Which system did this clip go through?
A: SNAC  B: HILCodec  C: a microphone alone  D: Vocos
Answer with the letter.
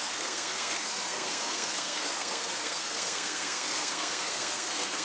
A